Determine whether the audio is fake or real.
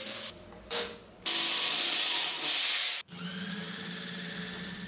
real